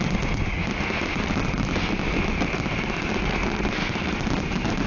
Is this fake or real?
real